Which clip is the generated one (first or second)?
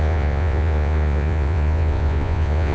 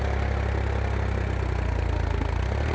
first